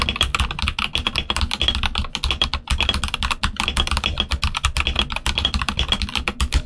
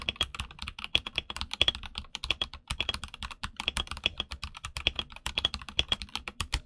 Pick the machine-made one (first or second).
second